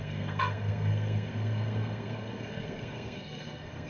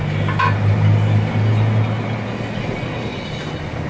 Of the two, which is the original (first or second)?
second